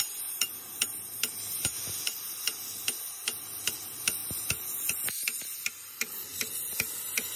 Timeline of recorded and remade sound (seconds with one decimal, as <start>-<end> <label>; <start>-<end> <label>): 0.0-7.4 recorded